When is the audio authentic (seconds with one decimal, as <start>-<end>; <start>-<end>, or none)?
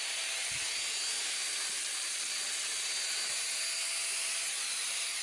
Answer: 0.0-5.2